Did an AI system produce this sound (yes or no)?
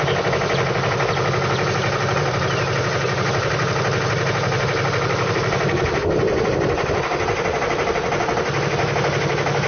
no